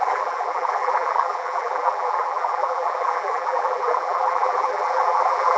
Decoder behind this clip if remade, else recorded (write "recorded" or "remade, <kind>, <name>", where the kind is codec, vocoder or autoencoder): remade, vocoder, BigVGAN v2